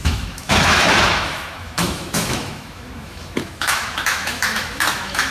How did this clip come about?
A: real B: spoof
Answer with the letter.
B